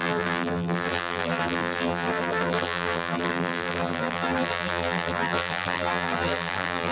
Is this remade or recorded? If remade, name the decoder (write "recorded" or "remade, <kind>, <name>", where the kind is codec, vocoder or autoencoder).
remade, vocoder, BigVGAN v2